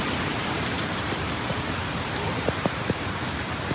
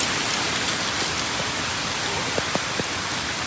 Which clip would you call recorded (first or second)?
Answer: second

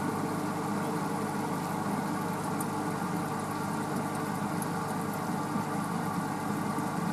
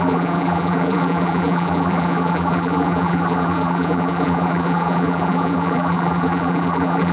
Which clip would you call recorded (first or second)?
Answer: first